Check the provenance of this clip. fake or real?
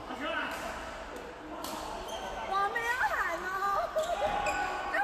real